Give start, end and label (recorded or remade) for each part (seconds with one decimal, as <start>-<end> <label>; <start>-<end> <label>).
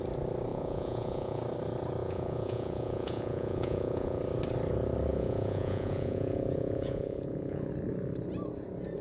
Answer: 0.0-0.5 recorded; 0.5-1.4 remade; 1.4-2.0 recorded; 2.0-4.2 remade; 4.2-5.1 recorded; 5.1-7.7 remade; 7.7-9.0 recorded